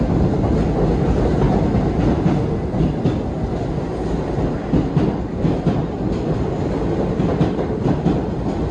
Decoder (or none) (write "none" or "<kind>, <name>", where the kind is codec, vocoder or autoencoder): none